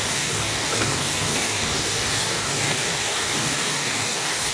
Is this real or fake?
fake